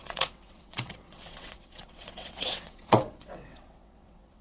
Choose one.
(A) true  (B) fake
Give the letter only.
B